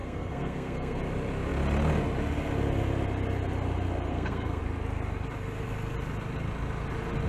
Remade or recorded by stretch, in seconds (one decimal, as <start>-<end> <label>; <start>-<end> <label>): 0.0-1.0 remade; 1.0-4.1 recorded; 4.1-4.6 remade; 4.6-7.3 recorded